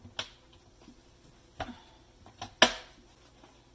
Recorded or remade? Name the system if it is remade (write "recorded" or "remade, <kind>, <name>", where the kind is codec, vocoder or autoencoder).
recorded